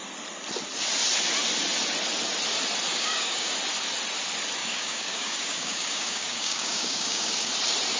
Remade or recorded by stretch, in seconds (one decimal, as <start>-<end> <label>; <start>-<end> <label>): 0.0-2.9 recorded; 2.9-3.5 remade; 3.5-4.6 recorded; 4.6-7.5 remade; 7.5-8.0 recorded